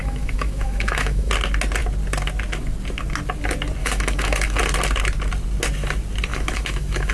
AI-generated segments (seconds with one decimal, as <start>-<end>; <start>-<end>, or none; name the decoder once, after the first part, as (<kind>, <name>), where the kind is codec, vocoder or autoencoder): 0.0-1.3 (autoencoder, DAC-VAE); 3.8-4.6; 6.3-7.1